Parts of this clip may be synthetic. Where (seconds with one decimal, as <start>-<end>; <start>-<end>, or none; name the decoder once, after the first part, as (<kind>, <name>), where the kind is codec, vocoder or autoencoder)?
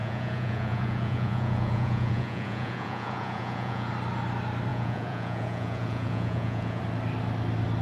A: 0.0-3.9 (vocoder, Vocos); 4.7-6.8